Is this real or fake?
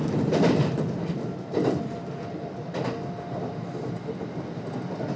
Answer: real